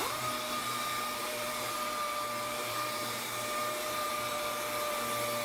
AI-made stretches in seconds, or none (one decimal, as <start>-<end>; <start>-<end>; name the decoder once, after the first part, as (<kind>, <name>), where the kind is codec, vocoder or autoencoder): 0.6-1.5 (vocoder, BigVGAN v2); 2.5-4.1